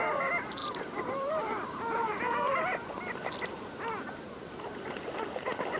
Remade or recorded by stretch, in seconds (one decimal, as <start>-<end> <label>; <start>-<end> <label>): 0.0-0.6 recorded; 0.6-2.2 remade; 2.2-5.8 recorded